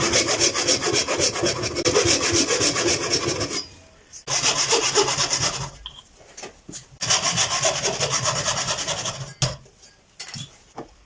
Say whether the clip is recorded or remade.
recorded